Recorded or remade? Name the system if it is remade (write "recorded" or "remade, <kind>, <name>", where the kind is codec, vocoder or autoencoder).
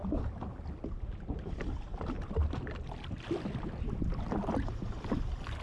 recorded